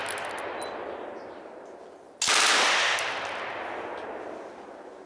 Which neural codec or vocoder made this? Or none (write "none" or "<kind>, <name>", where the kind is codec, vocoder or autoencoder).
none